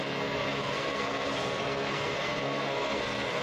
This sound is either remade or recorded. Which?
remade